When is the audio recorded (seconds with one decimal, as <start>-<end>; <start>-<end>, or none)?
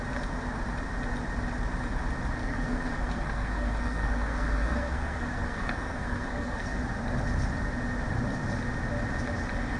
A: 0.0-2.4; 6.8-9.8